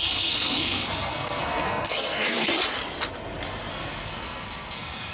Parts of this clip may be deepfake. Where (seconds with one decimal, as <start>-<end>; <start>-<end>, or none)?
0.0-2.4; 3.7-5.1